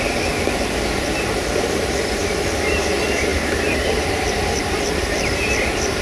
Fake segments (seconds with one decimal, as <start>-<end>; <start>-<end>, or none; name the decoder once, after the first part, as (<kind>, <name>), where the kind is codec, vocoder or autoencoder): 0.0-6.0 (vocoder, BigVGAN v2)